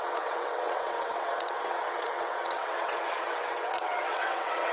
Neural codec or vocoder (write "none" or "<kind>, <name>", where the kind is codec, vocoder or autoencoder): vocoder, WaveNeXt